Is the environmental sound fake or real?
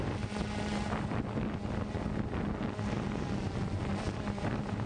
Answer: real